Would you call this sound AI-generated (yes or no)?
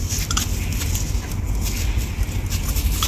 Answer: no